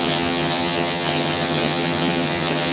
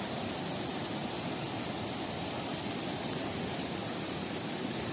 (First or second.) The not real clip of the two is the first